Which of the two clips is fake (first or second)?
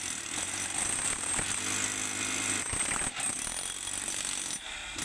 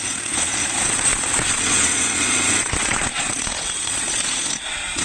second